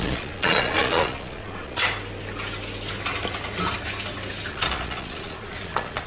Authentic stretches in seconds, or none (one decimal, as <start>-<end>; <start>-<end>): 1.8-4.5